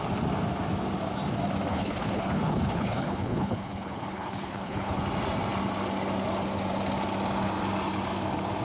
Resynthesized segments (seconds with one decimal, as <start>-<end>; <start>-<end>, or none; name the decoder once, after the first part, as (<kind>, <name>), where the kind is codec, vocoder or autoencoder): 1.7-5.0 (codec, HILCodec)